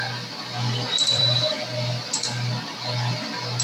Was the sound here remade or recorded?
remade